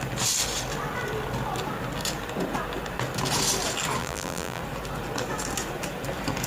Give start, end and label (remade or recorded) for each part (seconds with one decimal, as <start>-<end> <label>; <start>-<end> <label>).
0.0-4.0 recorded; 4.0-4.6 remade; 4.6-6.5 recorded